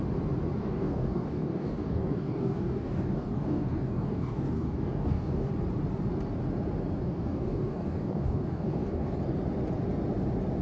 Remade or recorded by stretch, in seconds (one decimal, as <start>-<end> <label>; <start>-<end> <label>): 0.0-0.6 recorded; 0.6-5.5 remade; 5.5-7.0 recorded; 7.0-9.2 remade; 9.2-10.6 recorded